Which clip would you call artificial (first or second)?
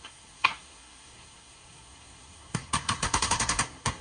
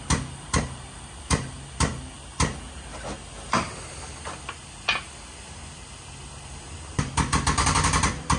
first